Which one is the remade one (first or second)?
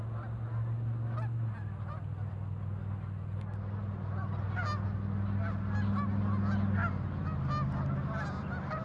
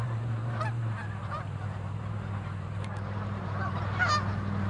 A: second